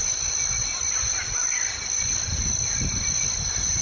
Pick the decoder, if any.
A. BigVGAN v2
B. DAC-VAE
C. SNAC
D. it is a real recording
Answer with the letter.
D